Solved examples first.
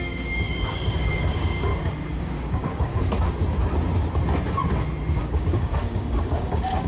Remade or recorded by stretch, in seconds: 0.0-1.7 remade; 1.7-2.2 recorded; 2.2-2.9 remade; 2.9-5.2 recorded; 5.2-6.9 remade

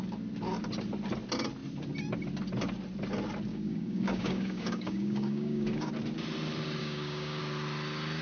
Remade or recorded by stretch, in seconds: 0.0-3.5 recorded; 3.5-5.9 remade; 5.9-6.8 recorded; 6.8-7.4 remade; 7.4-8.2 recorded

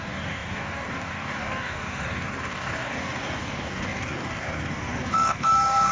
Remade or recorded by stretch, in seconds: 0.0-5.9 remade

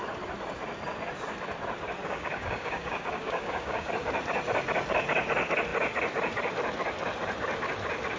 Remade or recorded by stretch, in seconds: 0.0-2.0 recorded; 2.0-3.9 remade; 3.9-8.2 recorded